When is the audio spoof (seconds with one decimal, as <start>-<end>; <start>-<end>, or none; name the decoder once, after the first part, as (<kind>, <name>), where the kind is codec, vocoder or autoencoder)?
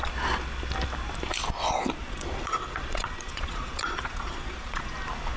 2.0-4.9 (vocoder, Vocos)